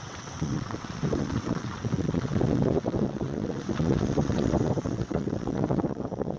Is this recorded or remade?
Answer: remade